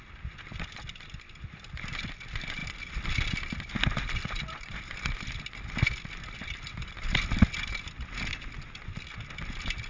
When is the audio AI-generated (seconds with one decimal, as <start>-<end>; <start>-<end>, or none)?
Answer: none

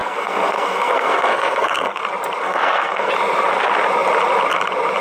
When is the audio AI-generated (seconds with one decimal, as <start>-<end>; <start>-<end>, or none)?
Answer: 0.0-2.0; 2.4-3.1

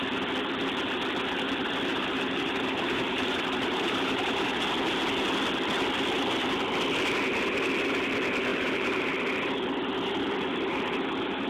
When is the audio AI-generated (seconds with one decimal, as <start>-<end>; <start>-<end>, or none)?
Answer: 1.9-4.6; 8.5-9.1

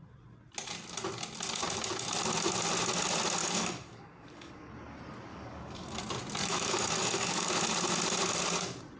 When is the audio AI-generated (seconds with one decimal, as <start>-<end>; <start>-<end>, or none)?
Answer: 3.4-4.7; 5.3-6.0; 6.4-7.5

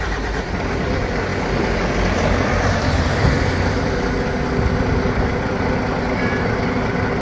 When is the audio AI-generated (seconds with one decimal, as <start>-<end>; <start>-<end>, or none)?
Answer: 0.0-1.3; 2.2-7.2